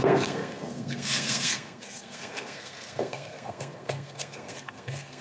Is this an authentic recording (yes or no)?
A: no